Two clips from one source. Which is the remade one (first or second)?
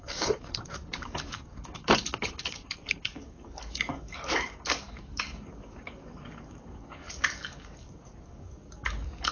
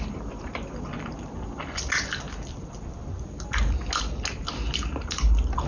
first